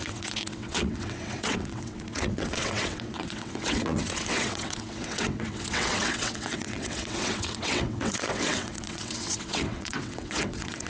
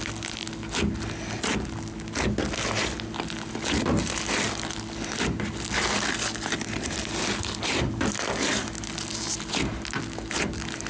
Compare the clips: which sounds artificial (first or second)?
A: first